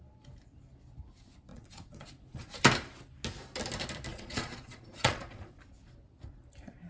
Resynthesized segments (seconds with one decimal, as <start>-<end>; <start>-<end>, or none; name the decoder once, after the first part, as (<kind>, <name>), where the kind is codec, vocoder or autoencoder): 1.5-2.5 (vocoder, Vocos); 4.1-5.6